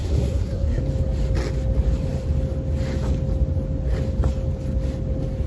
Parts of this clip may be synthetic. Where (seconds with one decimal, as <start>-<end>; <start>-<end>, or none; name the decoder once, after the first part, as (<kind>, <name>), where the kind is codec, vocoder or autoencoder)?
0.0-0.8 (codec, SNAC)